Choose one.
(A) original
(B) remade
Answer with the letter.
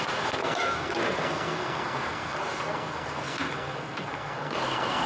B